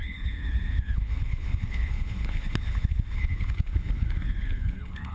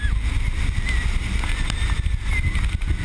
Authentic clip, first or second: second